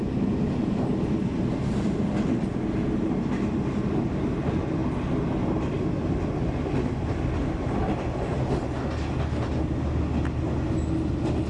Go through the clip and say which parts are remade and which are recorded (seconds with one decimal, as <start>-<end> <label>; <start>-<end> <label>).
0.0-11.5 recorded